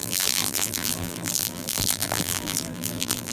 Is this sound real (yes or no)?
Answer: no